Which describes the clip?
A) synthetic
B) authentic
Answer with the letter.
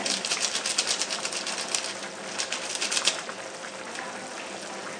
B